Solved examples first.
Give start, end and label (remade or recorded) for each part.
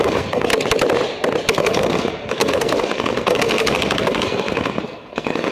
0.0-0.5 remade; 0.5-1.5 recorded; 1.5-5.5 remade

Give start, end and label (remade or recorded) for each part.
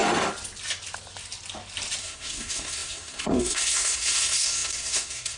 0.0-2.0 recorded; 2.0-5.4 remade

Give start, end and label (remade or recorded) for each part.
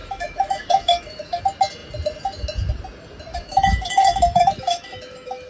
0.0-1.4 remade; 1.4-3.3 recorded; 3.3-5.5 remade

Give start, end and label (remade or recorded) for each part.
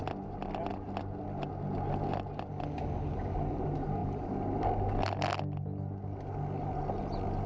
0.0-7.5 recorded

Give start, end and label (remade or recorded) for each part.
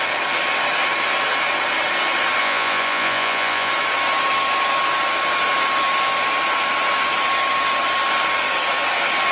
0.0-2.4 recorded; 2.4-3.7 remade; 3.7-9.3 recorded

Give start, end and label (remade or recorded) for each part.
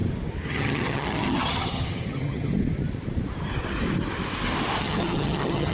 0.0-0.5 recorded; 0.5-2.5 remade; 2.5-4.8 recorded; 4.8-5.7 remade